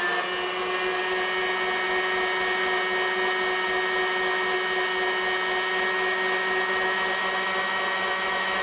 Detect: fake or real real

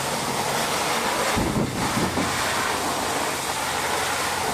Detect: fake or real real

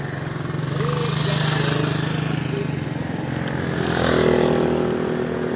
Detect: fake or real real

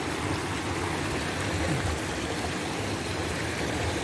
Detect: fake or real real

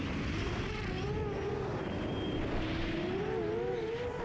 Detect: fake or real real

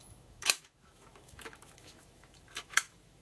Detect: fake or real fake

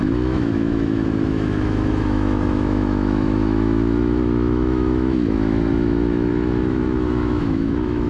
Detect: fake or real fake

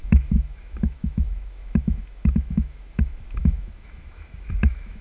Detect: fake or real fake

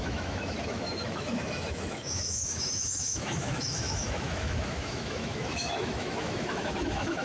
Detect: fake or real fake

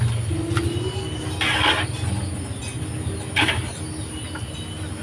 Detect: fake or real real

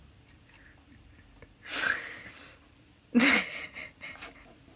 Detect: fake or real real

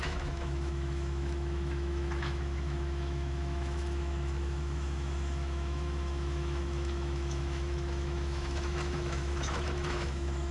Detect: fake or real fake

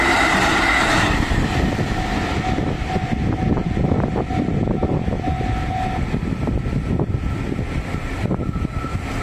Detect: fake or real real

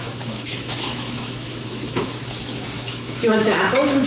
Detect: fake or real fake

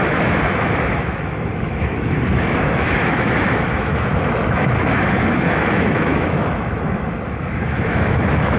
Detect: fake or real fake